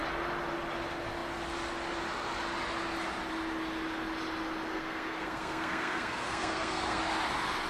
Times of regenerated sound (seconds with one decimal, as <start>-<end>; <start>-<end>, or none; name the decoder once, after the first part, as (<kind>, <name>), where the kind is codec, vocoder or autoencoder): 4.7-7.0 (codec, SNAC)